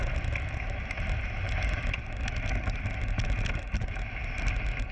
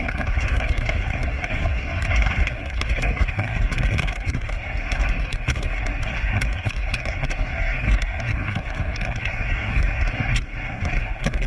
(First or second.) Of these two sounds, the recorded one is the first